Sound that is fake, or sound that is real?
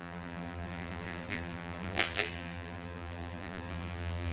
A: fake